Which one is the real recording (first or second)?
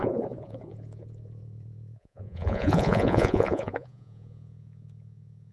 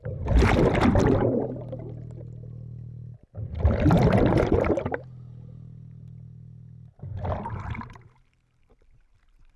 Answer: second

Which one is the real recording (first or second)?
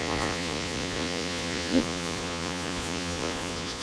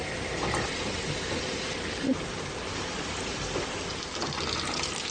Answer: second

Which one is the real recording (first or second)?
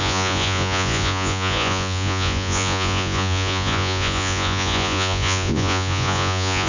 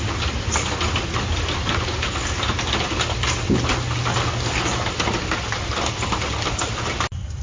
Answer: second